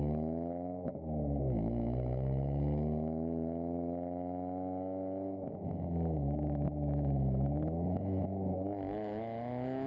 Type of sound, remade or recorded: remade